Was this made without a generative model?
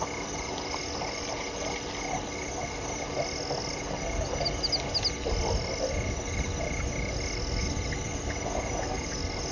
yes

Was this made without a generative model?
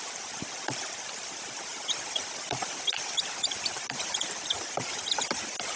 yes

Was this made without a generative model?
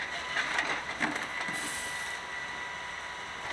yes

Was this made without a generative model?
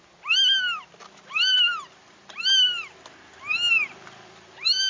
yes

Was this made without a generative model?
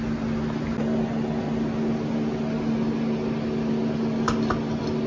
yes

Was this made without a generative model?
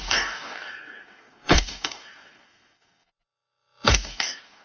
no